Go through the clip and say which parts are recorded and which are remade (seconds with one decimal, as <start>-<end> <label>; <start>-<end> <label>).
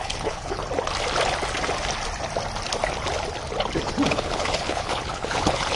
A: 0.0-0.6 remade; 0.6-4.1 recorded; 4.1-5.8 remade